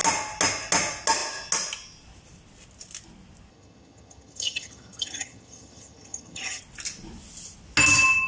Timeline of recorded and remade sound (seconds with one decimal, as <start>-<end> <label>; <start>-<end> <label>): 0.0-3.5 recorded; 3.5-6.6 remade; 6.6-8.3 recorded